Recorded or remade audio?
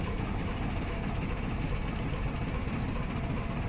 recorded